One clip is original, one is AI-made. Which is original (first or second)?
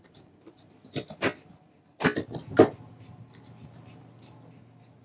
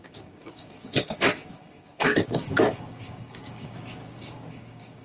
first